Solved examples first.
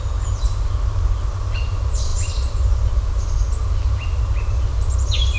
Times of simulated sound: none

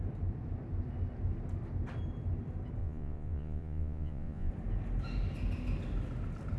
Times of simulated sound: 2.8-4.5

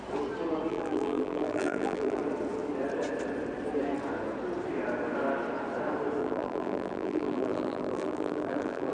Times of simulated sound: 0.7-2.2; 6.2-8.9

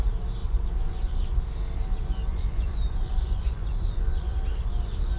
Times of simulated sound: 0.4-1.2; 2.3-4.4

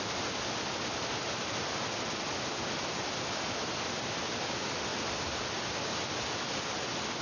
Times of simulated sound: 4.9-5.8